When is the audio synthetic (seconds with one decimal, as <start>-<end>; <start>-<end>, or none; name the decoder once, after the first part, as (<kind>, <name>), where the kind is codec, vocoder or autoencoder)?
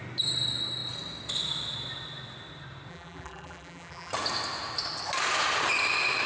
2.9-4.1 (vocoder, BigVGAN v2)